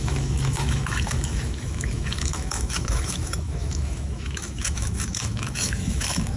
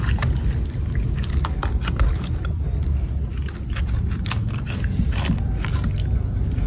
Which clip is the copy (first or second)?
first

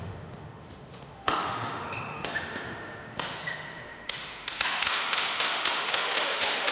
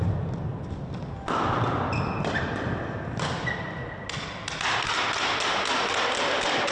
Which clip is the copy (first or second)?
first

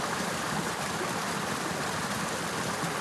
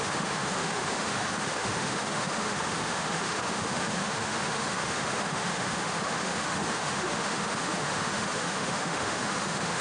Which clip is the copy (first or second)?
second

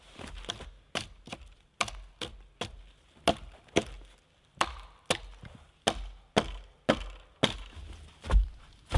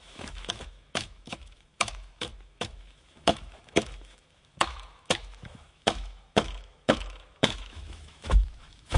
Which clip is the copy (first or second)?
second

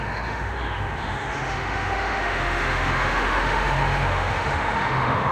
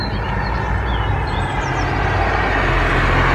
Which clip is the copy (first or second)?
first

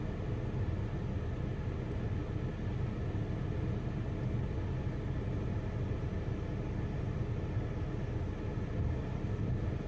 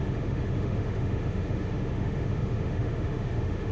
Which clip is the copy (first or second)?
second